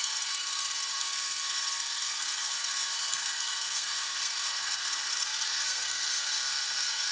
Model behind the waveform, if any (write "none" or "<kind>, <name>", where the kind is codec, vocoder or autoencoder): codec, SNAC